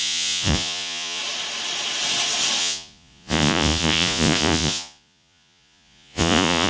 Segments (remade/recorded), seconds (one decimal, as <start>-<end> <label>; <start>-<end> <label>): 0.0-1.2 remade; 1.2-2.6 recorded; 2.6-6.7 remade